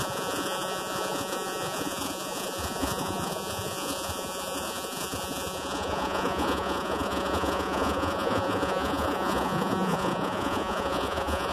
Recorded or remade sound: remade